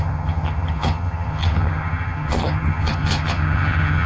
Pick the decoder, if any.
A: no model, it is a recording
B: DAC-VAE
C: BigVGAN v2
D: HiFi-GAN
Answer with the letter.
D